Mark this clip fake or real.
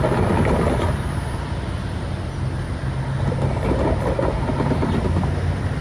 real